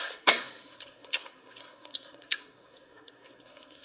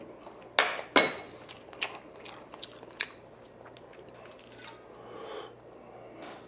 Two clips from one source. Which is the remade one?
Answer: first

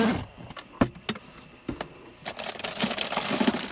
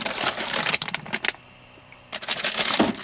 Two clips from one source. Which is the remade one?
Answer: second